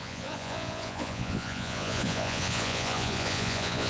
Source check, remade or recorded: remade